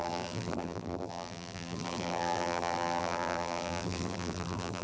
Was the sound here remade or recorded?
remade